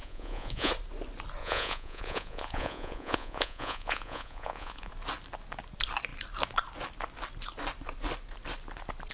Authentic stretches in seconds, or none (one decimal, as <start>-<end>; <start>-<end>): 0.7-1.4; 4.9-9.1